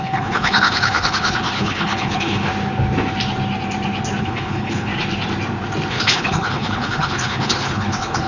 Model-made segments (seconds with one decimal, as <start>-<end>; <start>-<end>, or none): 0.0-2.5; 4.2-4.9; 5.9-8.3